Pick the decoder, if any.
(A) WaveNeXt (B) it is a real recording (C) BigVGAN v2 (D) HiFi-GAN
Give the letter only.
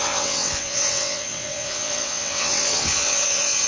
A